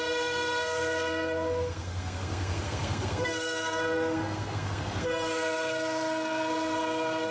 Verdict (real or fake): fake